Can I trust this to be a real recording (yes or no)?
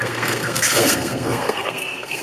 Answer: no